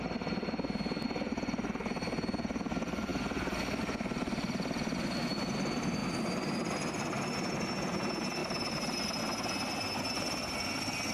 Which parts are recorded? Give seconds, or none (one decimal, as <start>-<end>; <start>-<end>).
0.0-8.4; 9.2-11.1